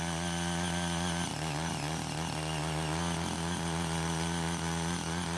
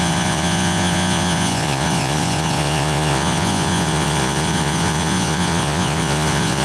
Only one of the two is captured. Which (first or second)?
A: first